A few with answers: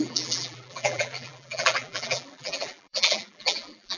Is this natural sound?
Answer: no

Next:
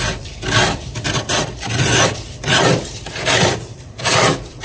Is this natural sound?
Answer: no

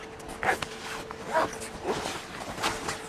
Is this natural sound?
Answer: yes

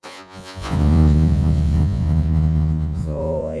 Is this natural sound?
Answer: no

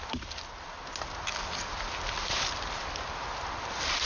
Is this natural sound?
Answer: yes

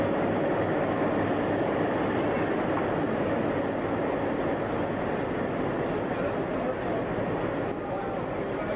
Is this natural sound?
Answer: yes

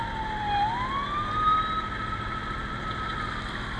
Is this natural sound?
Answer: yes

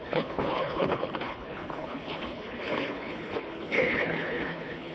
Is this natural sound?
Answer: no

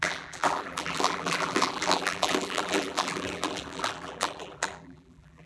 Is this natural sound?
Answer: no